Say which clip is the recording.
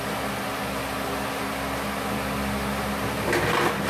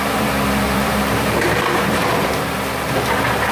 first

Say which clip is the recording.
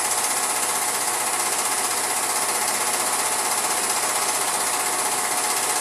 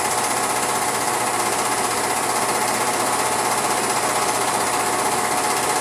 first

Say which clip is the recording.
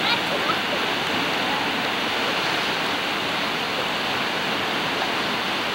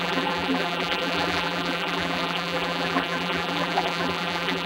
first